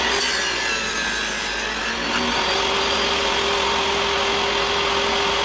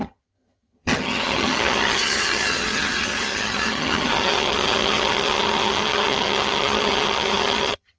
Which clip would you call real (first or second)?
first